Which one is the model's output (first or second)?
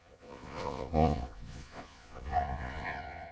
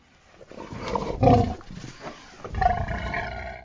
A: first